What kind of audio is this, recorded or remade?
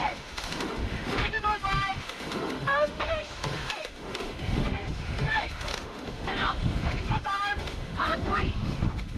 remade